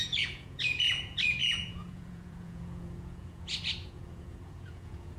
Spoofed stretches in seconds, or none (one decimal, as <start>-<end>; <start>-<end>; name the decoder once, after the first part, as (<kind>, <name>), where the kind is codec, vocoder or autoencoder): 0.0-5.2 (vocoder, Vocos)

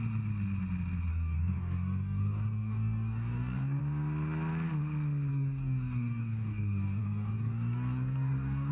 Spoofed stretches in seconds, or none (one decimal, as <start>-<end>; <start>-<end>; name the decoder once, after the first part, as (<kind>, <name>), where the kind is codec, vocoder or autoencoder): 1.1-3.8 (codec, DAC); 5.3-8.7

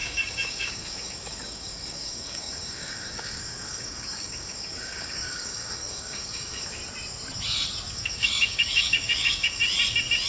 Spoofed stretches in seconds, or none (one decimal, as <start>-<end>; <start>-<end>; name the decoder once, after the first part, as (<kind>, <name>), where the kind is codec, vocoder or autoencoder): 0.0-6.8 (codec, DAC); 7.9-9.6

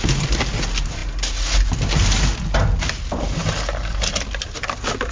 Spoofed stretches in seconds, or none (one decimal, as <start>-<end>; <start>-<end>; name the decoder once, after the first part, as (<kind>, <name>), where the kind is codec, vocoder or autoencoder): none